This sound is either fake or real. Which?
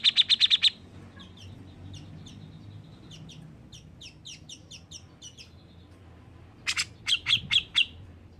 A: real